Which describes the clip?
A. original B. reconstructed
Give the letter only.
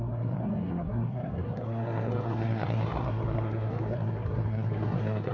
B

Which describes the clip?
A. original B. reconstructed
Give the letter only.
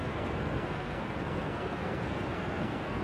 B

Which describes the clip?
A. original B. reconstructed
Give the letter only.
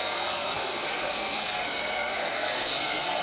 B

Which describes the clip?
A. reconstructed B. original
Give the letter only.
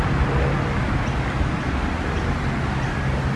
B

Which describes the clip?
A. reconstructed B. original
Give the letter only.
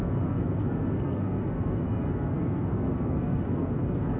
A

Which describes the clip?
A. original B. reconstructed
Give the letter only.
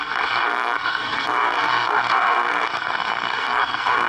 B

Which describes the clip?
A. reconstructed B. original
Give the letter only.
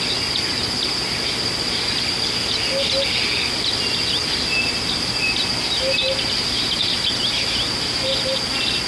B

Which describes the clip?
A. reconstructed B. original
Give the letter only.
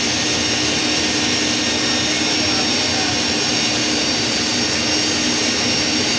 B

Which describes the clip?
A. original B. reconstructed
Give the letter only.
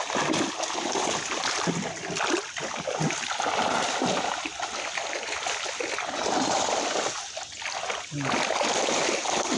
A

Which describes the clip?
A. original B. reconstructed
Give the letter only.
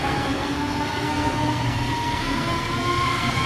B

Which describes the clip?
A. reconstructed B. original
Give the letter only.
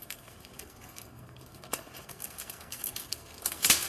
A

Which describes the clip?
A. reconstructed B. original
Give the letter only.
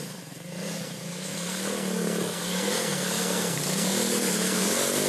A